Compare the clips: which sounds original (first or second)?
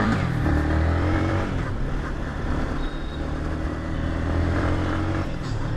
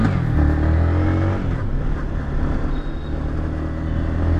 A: second